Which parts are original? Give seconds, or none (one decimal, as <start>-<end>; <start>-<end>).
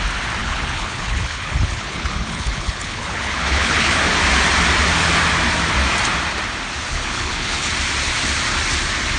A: 0.0-0.4; 4.0-6.9; 7.7-9.2